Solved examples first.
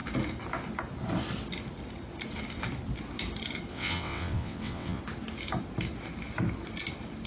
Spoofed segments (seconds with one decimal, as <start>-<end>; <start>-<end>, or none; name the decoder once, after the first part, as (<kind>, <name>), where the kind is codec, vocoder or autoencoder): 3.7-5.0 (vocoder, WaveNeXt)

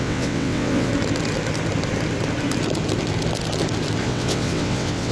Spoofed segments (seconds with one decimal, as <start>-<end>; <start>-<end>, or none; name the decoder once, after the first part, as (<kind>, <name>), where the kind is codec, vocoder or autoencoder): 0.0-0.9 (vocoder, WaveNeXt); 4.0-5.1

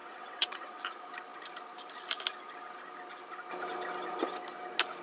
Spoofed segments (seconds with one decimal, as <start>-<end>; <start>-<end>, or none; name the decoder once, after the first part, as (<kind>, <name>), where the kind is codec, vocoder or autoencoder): 0.0-0.8 (vocoder, WaveNeXt)